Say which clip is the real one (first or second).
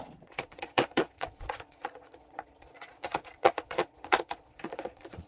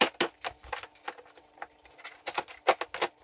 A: second